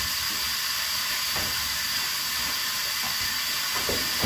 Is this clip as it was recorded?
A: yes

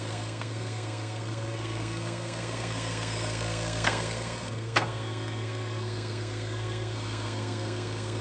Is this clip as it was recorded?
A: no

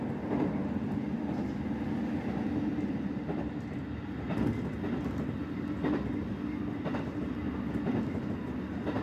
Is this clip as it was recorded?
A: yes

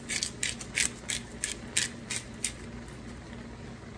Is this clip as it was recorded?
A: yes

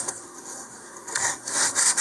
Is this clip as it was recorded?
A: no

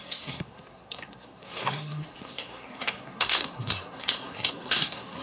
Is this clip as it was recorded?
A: no